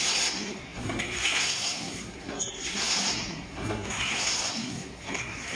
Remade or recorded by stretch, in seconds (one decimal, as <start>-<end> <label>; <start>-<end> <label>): 0.0-5.6 remade